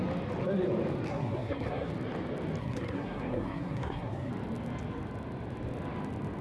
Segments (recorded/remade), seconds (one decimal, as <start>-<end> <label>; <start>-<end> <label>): 0.0-1.1 recorded; 1.1-1.9 remade; 1.9-2.6 recorded; 2.6-4.3 remade; 4.3-6.4 recorded

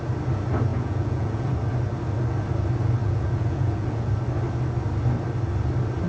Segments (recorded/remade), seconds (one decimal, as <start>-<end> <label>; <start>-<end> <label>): 0.0-0.7 recorded; 0.7-1.5 remade; 1.5-3.0 recorded; 3.0-4.1 remade; 4.1-6.1 recorded

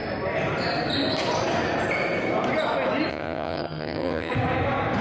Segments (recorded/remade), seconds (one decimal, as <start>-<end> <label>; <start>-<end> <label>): 0.0-3.1 recorded; 3.1-4.3 remade; 4.3-5.0 recorded

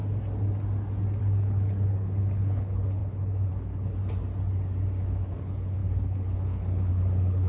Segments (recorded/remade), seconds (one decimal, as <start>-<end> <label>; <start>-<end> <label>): 0.0-1.2 recorded; 1.2-4.0 remade; 4.0-5.0 recorded; 5.0-7.5 remade

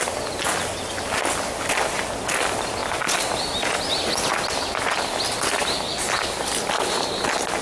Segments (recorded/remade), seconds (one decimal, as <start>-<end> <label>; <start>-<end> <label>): 0.0-2.8 recorded; 2.8-3.8 remade; 3.8-7.6 recorded

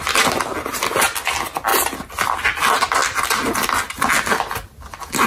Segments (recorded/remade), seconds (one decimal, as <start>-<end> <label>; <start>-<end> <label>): 0.0-5.3 recorded

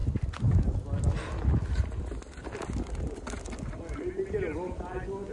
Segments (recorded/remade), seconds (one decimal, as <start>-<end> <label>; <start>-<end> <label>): 0.0-5.3 recorded